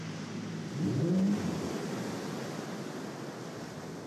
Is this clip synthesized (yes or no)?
no